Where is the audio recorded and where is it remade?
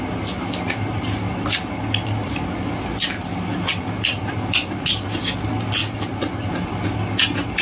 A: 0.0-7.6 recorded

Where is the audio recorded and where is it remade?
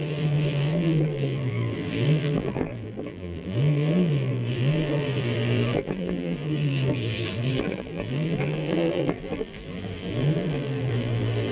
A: 0.0-11.5 remade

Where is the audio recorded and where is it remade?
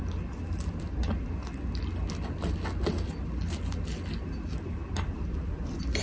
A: 0.0-6.0 recorded